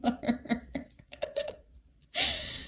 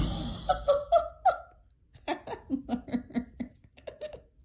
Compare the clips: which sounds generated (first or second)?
first